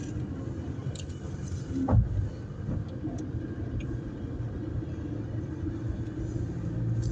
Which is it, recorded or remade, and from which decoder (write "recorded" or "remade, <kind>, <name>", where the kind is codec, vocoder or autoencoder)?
recorded